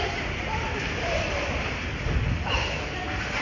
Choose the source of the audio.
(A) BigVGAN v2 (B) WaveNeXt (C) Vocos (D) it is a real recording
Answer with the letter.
D